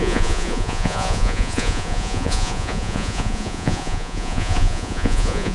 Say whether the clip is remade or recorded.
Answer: remade